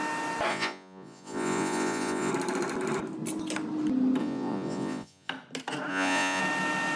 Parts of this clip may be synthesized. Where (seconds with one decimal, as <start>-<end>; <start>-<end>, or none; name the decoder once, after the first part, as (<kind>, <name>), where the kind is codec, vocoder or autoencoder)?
0.5-2.3 (vocoder, Vocos); 4.2-5.3; 5.9-6.4